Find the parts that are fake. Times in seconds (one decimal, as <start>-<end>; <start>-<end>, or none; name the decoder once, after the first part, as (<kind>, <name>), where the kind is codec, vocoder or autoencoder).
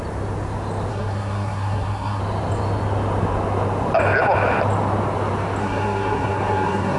0.9-2.2 (codec, SNAC); 5.6-7.0